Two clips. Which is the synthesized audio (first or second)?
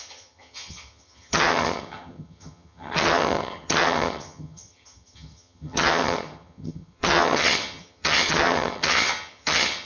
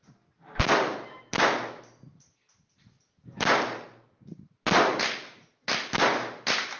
first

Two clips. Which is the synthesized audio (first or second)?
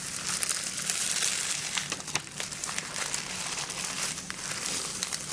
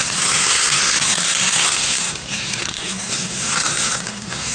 second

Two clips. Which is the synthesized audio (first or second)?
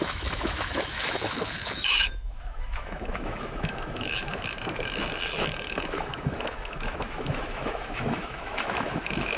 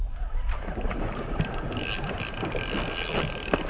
first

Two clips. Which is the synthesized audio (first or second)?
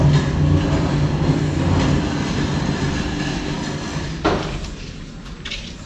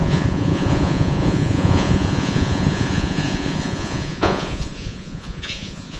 second